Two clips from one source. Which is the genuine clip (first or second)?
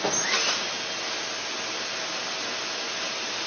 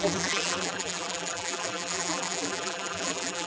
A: first